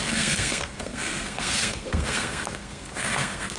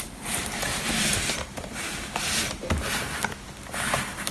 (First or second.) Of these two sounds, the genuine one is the second